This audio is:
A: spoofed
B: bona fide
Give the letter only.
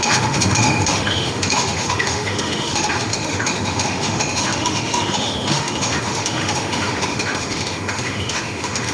A